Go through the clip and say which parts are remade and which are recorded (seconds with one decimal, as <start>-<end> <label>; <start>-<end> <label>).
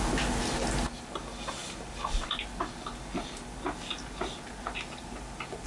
0.0-5.7 recorded